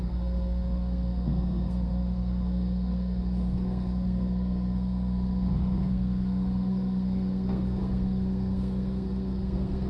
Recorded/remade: remade